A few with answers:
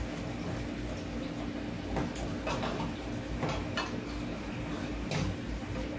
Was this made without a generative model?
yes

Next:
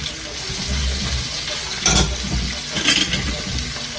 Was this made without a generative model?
yes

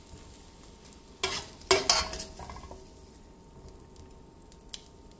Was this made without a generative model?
yes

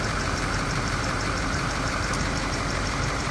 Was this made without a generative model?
no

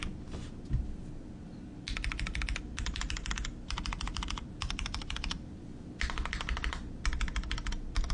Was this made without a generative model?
yes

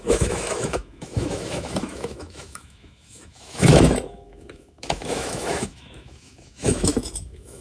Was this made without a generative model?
no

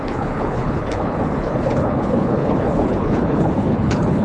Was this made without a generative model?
no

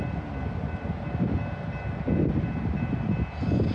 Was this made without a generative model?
yes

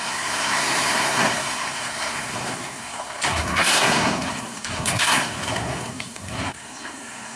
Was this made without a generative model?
no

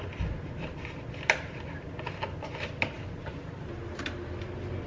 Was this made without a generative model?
yes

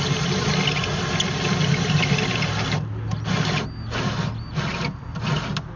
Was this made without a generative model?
yes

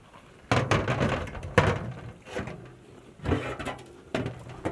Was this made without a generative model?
yes